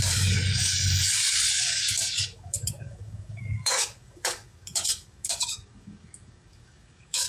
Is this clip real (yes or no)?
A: no